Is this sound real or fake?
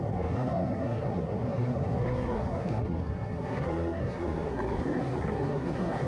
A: fake